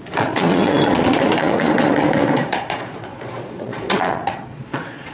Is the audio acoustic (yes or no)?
no